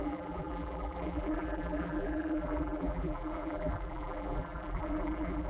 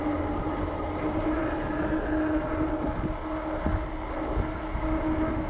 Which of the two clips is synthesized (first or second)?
first